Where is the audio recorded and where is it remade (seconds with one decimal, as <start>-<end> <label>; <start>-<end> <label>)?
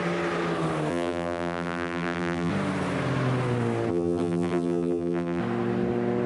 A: 0.0-0.9 recorded; 0.9-2.5 remade; 2.5-3.9 recorded; 3.9-5.4 remade; 5.4-6.3 recorded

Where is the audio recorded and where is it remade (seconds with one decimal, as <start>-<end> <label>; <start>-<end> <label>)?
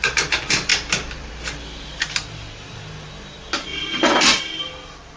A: 0.0-0.7 recorded; 0.7-1.3 remade; 1.3-3.7 recorded; 3.7-4.4 remade; 4.4-5.2 recorded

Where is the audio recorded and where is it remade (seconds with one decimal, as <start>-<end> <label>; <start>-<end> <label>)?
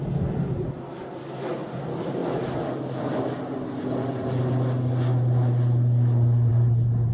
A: 0.0-7.1 recorded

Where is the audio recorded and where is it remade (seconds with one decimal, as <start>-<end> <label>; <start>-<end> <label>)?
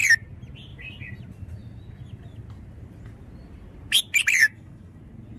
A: 0.0-4.4 recorded; 4.4-5.0 remade; 5.0-5.4 recorded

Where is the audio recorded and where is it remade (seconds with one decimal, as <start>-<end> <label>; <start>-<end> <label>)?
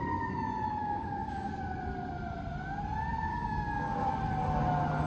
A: 0.0-0.8 recorded; 0.8-1.5 remade; 1.5-3.3 recorded; 3.3-4.1 remade; 4.1-5.1 recorded